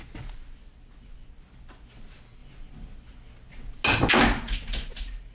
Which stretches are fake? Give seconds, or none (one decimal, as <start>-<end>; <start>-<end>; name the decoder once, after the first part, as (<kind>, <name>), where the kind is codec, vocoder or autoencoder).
none